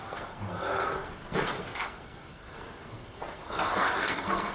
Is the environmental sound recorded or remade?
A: remade